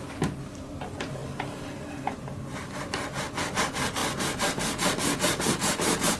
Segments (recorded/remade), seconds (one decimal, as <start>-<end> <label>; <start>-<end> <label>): 0.0-6.2 recorded